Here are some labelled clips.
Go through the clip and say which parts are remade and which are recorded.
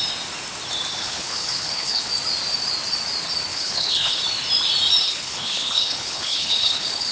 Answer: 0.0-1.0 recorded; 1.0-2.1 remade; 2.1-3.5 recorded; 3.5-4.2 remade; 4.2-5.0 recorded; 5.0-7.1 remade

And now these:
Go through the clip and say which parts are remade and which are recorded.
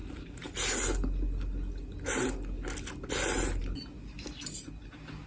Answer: 0.0-5.3 recorded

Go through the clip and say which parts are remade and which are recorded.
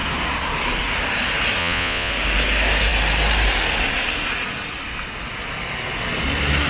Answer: 0.0-1.6 recorded; 1.6-2.1 remade; 2.1-6.7 recorded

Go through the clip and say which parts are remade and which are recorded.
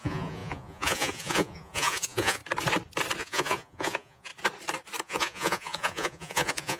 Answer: 0.0-2.4 remade; 2.4-3.2 recorded; 3.2-4.3 remade; 4.3-5.0 recorded; 5.0-6.8 remade